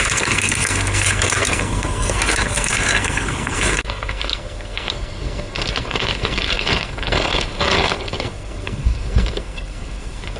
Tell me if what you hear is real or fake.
fake